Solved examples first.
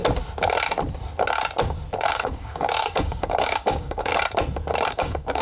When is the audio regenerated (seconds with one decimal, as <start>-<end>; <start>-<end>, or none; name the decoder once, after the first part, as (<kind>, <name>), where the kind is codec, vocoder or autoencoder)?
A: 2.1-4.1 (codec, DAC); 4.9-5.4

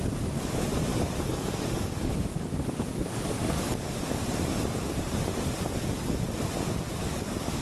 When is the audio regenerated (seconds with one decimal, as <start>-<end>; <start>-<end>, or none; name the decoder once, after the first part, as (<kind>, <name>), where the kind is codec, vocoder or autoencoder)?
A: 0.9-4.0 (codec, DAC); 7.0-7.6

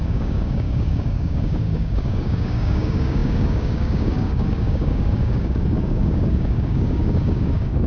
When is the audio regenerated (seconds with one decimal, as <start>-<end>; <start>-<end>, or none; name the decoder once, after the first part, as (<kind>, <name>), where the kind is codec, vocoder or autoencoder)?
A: 0.0-7.9 (codec, DAC)

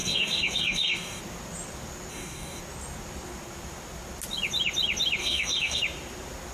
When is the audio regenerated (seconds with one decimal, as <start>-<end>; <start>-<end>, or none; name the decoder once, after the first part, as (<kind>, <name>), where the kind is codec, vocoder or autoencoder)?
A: 0.0-1.2 (codec, DAC); 2.1-2.6; 5.2-5.8

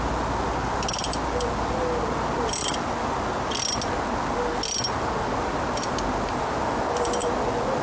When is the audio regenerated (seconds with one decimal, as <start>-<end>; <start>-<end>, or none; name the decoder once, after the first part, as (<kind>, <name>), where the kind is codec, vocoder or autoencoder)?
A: none